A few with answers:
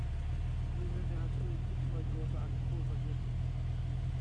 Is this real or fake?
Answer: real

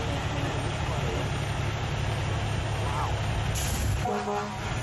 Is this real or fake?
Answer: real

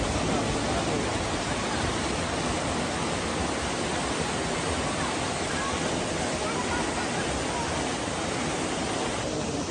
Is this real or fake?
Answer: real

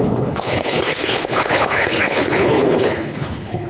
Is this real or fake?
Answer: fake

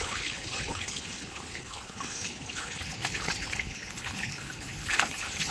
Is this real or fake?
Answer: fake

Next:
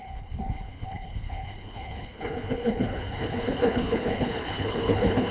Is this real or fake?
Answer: fake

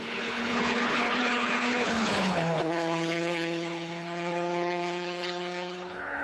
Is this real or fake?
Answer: fake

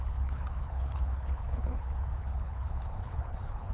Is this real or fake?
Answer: fake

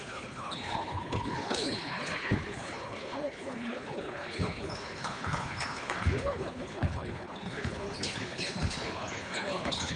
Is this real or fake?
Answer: fake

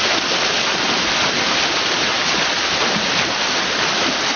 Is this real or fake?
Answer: real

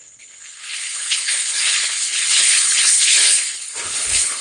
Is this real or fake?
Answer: fake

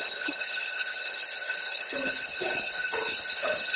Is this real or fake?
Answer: fake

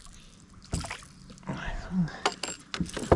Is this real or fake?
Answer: real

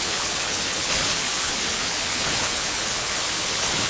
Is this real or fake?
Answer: fake